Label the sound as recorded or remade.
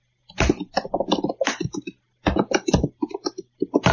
recorded